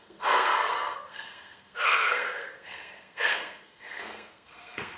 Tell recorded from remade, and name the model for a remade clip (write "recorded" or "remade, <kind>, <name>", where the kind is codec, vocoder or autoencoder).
remade, codec, SNAC